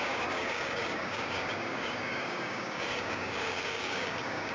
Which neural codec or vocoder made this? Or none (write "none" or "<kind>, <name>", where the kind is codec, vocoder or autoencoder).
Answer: codec, DAC